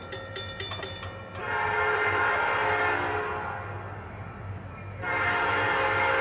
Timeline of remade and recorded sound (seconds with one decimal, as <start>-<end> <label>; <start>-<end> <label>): 0.0-1.4 recorded; 1.4-2.4 remade; 2.4-6.2 recorded